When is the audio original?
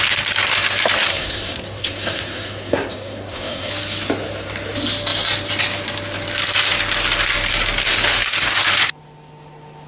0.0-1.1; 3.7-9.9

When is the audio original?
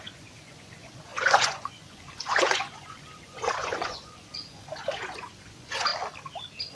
5.9-6.7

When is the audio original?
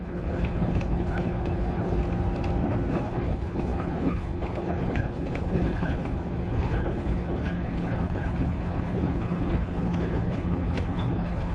2.0-2.9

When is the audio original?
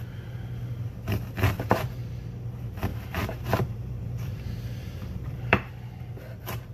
0.0-2.9; 5.7-6.7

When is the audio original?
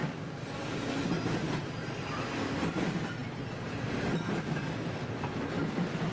0.0-6.1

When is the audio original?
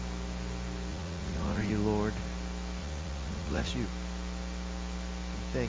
0.0-0.9; 1.7-2.8; 3.7-5.7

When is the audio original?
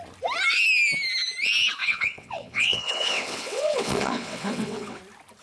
0.0-1.8; 5.0-5.4